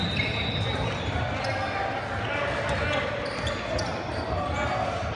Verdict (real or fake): real